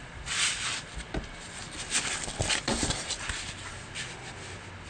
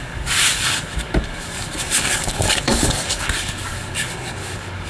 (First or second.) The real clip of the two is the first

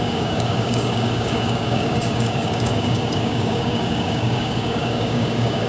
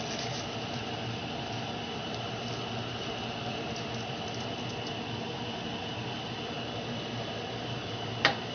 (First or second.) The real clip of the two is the second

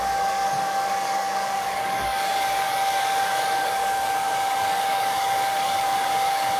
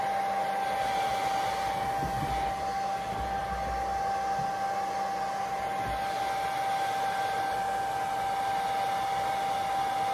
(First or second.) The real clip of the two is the second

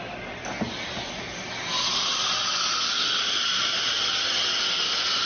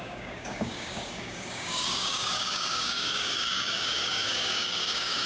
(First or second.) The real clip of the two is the first